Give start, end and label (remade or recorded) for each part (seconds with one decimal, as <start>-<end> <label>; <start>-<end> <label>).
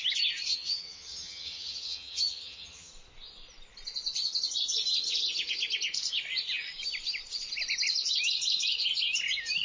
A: 0.0-0.5 recorded; 0.5-2.9 remade; 2.9-9.6 recorded